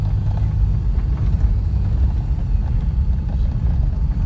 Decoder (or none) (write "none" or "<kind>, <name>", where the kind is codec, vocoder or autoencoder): none